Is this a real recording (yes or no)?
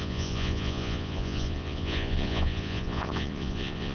no